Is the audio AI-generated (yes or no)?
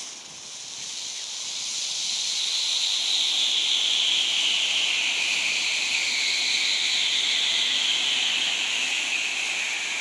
no